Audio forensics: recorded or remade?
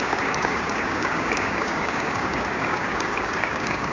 remade